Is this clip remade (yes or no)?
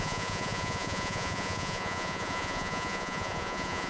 yes